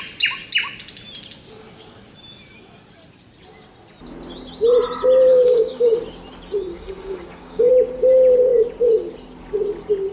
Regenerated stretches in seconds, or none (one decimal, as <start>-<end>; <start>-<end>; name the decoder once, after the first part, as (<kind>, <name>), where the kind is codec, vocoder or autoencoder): 5.3-6.0 (codec, DAC); 6.7-7.7